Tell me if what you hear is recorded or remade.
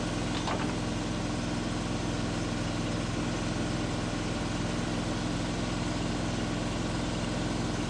recorded